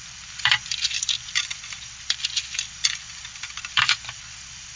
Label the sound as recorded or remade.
remade